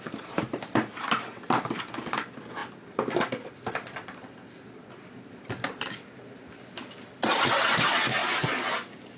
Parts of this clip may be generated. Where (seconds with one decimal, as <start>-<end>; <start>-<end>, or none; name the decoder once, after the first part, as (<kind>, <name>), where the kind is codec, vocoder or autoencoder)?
none